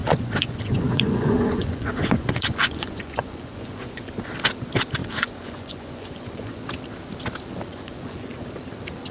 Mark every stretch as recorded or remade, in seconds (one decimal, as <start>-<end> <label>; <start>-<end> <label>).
0.0-4.1 remade; 4.1-5.0 recorded; 5.0-6.7 remade; 6.7-7.7 recorded; 7.7-8.3 remade; 8.3-9.1 recorded